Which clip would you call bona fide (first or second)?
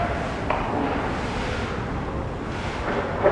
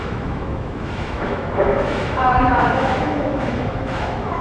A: first